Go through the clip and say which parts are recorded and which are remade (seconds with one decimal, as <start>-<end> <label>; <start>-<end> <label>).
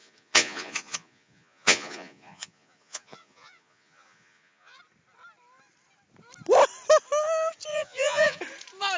0.0-4.8 remade; 4.8-7.7 recorded; 7.7-8.4 remade; 8.4-9.0 recorded